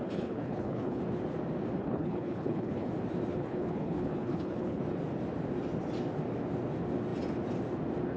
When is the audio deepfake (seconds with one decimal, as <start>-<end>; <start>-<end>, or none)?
0.0-1.0; 1.8-2.9; 3.3-4.8